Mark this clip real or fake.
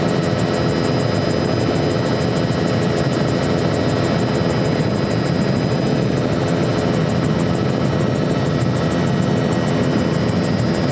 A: real